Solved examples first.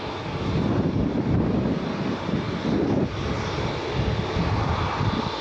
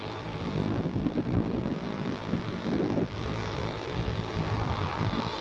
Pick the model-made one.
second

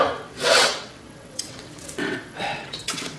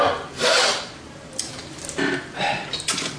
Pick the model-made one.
first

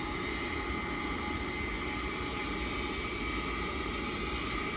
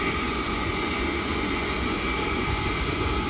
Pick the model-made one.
second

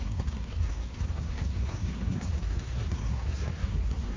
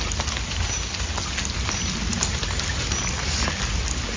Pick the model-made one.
first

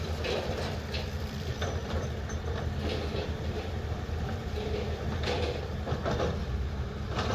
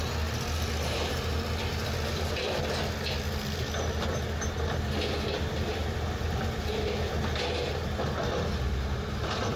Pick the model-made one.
first